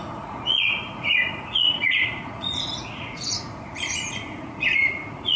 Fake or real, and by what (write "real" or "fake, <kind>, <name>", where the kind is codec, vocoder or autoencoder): fake, vocoder, Vocos